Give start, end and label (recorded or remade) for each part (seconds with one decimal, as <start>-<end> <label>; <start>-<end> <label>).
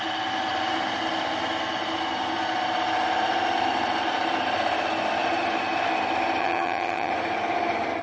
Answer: 0.0-6.4 recorded; 6.4-7.1 remade; 7.1-8.0 recorded